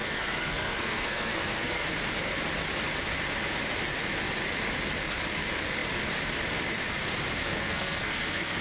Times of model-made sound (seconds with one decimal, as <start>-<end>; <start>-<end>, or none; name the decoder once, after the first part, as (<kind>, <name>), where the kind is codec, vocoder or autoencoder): 0.0-1.9 (codec, SNAC); 7.4-8.6